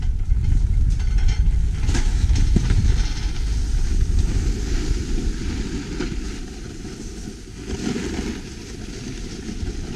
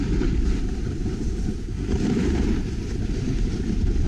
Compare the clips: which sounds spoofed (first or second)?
second